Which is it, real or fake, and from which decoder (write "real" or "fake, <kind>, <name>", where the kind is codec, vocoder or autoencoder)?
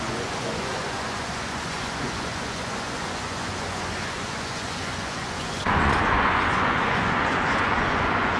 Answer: fake, vocoder, Vocos